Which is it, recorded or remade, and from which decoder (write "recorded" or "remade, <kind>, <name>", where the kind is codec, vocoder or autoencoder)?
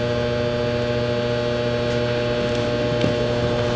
recorded